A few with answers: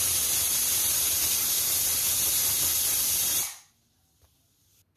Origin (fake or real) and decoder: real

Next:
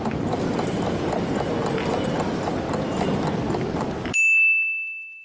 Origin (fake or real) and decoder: real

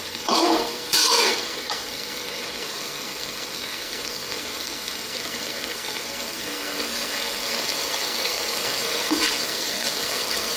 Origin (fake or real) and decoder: fake, codec, SNAC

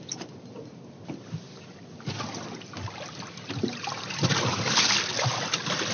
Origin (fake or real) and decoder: real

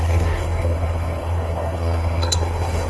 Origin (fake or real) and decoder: fake, codec, SNAC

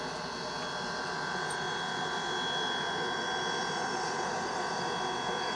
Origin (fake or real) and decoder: real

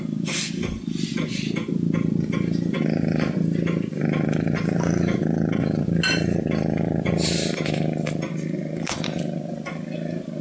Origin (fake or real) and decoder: real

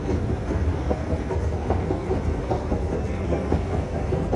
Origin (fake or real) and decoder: fake, codec, SNAC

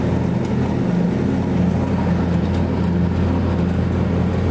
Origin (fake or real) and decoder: real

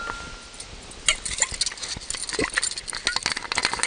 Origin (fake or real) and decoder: real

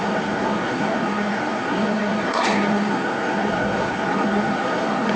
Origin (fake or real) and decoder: fake, codec, SNAC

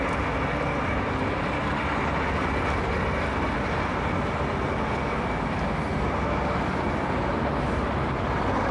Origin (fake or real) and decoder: real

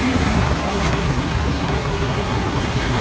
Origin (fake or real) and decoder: fake, codec, SNAC